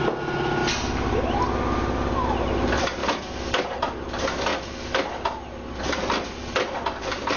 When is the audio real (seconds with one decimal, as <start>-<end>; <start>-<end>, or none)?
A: 0.0-7.4